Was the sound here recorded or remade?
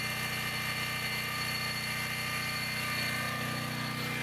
recorded